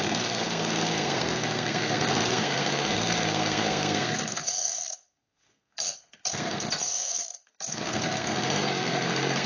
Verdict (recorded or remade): remade